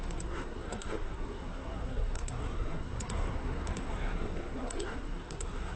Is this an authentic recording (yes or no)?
no